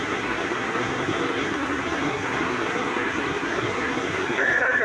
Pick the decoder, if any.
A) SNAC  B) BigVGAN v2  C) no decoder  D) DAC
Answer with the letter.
A